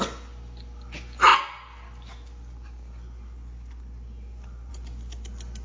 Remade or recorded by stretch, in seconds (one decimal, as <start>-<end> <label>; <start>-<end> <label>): 0.0-5.6 recorded